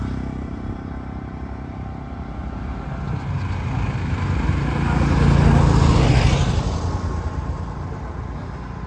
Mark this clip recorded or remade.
recorded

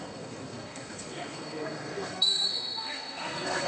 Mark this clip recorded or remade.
remade